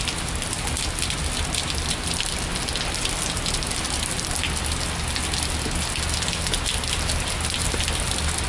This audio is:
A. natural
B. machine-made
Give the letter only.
A